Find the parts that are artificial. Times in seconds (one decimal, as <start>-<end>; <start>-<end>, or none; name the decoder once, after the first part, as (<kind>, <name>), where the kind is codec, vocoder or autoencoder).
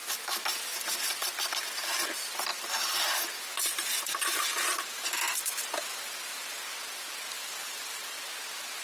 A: 1.0-2.5 (vocoder, BigVGAN v2); 5.0-8.0